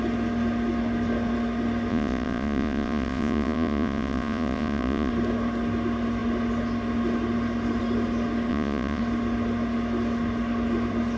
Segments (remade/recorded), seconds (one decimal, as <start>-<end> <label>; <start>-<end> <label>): 0.0-1.9 recorded; 1.9-5.1 remade; 5.1-8.5 recorded; 8.5-9.0 remade; 9.0-11.2 recorded